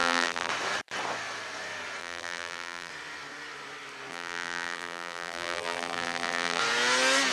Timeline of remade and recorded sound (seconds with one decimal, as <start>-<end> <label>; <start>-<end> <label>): 0.0-0.5 remade; 0.5-2.0 recorded; 2.0-2.9 remade; 2.9-4.1 recorded; 4.1-6.6 remade; 6.6-7.3 recorded